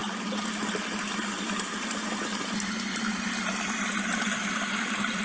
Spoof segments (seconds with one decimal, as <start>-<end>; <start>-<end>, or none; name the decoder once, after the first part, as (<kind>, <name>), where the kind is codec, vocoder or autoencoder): none